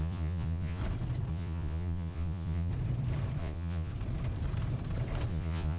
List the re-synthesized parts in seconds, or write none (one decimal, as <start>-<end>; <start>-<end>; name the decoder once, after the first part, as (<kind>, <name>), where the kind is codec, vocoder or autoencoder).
0.0-0.8 (vocoder, Vocos); 1.3-2.7; 3.4-3.9; 5.3-5.8

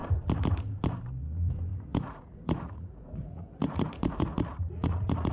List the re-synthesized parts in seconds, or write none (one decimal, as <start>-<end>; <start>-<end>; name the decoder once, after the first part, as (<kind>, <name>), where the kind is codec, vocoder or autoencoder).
1.7-5.3 (vocoder, Vocos)

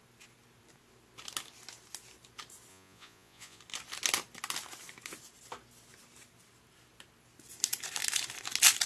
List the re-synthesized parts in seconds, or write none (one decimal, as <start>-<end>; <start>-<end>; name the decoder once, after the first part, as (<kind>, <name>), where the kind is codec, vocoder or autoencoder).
2.7-3.6 (vocoder, Vocos)

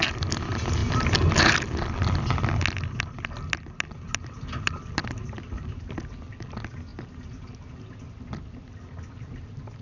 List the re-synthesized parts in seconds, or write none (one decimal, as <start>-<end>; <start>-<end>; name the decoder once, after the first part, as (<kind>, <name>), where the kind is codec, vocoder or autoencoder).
none